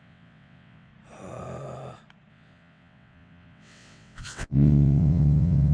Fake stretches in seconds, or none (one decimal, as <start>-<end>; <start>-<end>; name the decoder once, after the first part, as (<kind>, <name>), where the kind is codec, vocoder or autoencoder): 0.0-0.9 (vocoder, WaveNeXt); 2.3-5.7